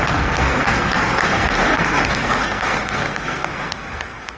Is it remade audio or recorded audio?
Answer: remade